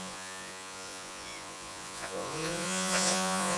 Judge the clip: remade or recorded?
remade